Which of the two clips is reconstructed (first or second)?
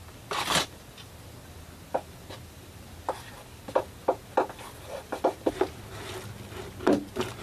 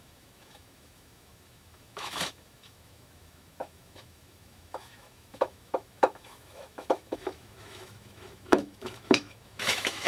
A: second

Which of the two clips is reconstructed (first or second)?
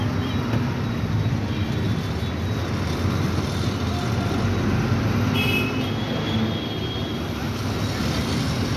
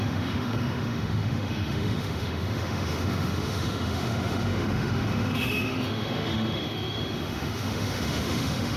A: second